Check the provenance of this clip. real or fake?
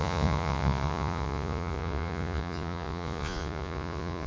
fake